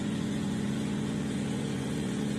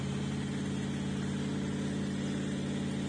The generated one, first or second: first